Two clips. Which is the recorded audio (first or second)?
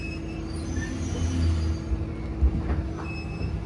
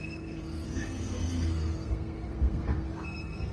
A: first